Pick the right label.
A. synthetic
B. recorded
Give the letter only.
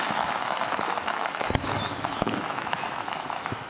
A